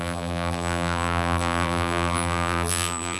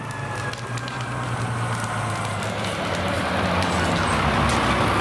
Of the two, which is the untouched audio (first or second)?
second